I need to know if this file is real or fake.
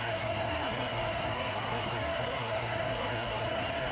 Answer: fake